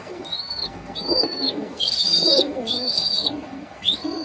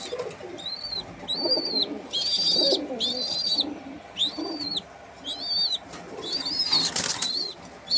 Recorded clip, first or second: second